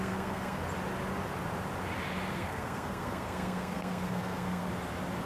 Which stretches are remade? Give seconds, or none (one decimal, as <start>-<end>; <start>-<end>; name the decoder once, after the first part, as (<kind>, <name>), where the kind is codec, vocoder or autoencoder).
0.0-0.6 (codec, SNAC); 2.3-4.6